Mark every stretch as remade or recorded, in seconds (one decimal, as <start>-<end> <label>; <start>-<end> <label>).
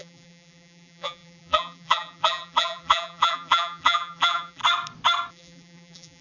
0.0-4.6 remade; 4.6-5.3 recorded; 5.3-6.2 remade